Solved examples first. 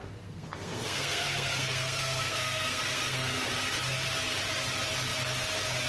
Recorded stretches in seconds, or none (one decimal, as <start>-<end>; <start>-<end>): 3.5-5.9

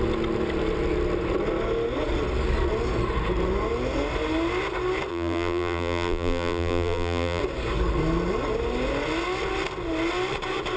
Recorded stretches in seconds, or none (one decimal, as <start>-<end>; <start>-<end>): 0.0-5.1; 7.4-10.8

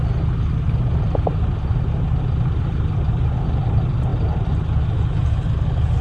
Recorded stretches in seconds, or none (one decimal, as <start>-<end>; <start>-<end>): 0.0-6.0

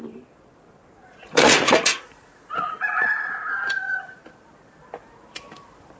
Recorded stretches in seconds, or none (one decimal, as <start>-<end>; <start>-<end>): 0.0-1.0; 4.2-6.0